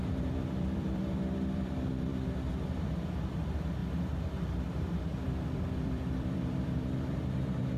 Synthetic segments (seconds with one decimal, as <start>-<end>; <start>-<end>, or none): 0.0-3.8; 4.9-7.8